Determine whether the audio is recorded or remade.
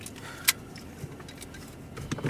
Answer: recorded